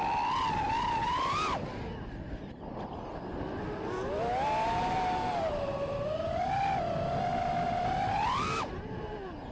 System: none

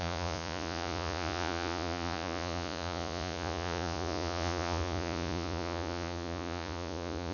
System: vocoder, Vocos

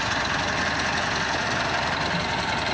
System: none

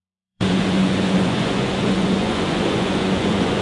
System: vocoder, Vocos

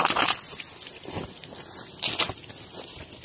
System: none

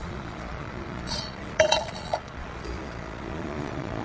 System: vocoder, Vocos